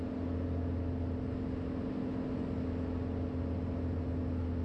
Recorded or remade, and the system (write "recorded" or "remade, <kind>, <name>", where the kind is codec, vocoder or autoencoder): recorded